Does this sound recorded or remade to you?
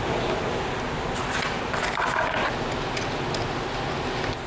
recorded